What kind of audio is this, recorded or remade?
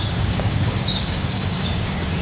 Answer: remade